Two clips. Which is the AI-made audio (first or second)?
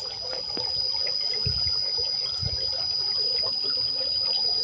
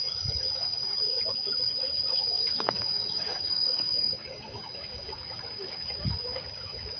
second